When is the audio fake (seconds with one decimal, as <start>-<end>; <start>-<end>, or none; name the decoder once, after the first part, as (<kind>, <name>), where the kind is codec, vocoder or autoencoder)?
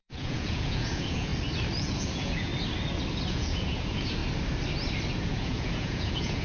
0.0-1.3 (vocoder, Vocos); 1.8-2.5; 3.3-4.2; 5.3-6.4